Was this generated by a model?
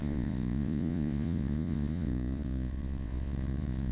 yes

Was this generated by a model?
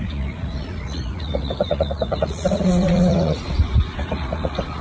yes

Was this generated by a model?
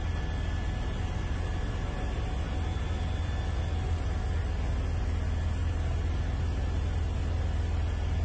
no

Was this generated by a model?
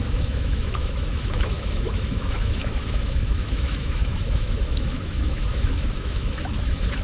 yes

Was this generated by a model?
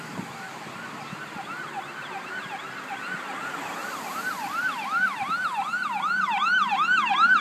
no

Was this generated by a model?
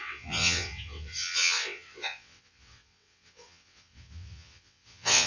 yes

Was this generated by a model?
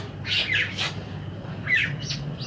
no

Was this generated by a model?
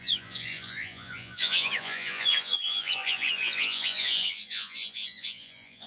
yes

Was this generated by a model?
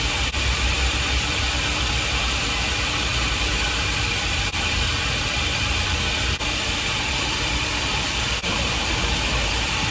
yes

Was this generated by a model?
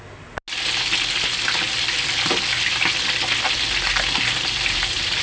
no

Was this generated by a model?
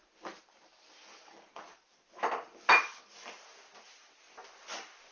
no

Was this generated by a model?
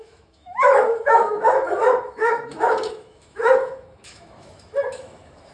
yes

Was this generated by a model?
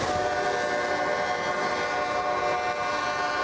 no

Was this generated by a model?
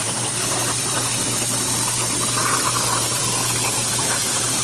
no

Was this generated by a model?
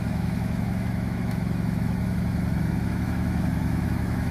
yes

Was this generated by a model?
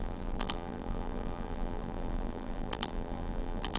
yes